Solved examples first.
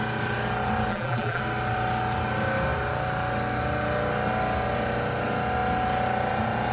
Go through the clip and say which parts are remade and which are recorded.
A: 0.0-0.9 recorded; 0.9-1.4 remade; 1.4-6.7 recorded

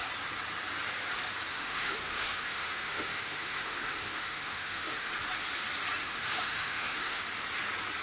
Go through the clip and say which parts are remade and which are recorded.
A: 0.0-1.5 recorded; 1.5-5.1 remade; 5.1-6.0 recorded; 6.0-7.2 remade; 7.2-8.0 recorded

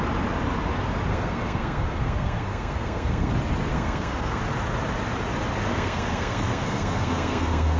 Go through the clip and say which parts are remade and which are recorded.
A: 0.0-1.1 recorded; 1.1-3.3 remade; 3.3-3.7 recorded; 3.7-4.4 remade; 4.4-5.7 recorded; 5.7-7.8 remade